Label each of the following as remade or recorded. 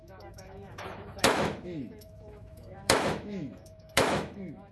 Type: remade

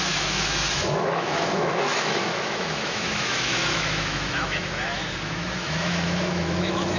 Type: remade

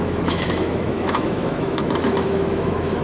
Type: remade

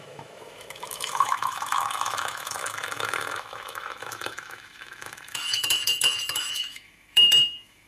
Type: remade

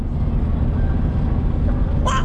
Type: recorded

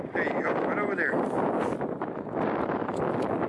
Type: recorded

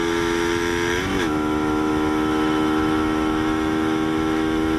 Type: remade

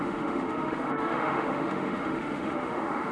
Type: remade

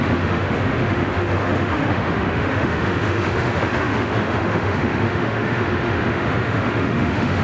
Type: remade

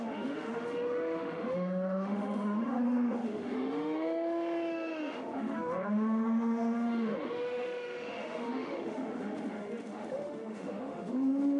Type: remade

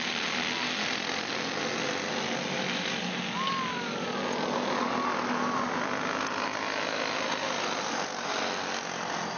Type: recorded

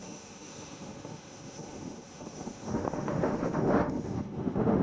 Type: remade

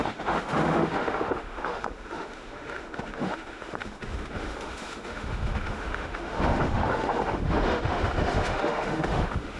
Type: remade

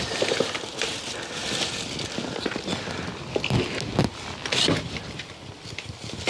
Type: recorded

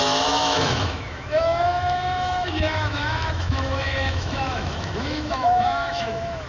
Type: remade